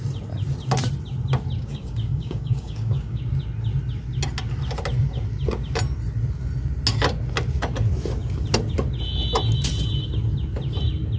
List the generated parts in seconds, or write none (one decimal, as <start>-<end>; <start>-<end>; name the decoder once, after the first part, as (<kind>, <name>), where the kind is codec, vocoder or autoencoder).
1.6-3.2 (codec, DAC)

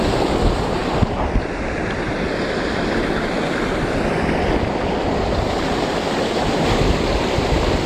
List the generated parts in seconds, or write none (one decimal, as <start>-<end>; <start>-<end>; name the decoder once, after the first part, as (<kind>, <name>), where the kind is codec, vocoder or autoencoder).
none

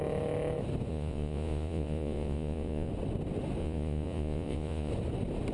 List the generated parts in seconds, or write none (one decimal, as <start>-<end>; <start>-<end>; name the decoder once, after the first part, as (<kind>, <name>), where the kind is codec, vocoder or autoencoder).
0.9-2.9 (vocoder, Vocos); 3.6-4.9